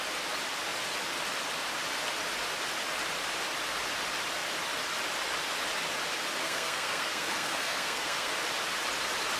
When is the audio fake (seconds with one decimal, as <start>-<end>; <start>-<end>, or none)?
6.4-8.3